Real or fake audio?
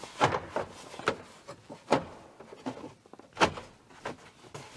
real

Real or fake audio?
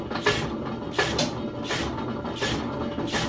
real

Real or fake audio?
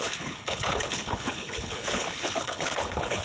fake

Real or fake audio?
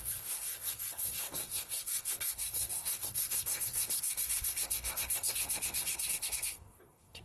fake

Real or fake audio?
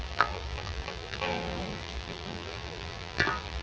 fake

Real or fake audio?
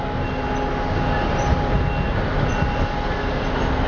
real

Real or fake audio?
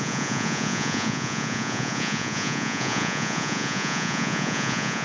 fake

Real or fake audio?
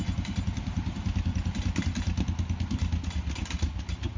real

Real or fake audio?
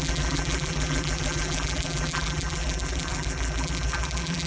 fake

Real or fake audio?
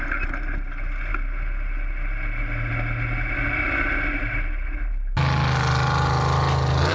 real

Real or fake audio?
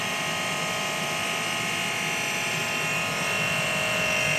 real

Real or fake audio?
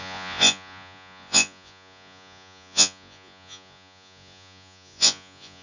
fake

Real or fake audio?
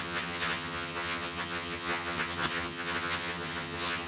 fake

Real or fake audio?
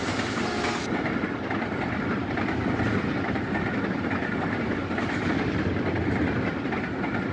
real